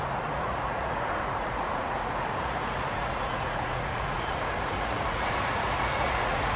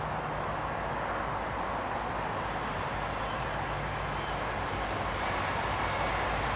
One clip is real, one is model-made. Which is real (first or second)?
second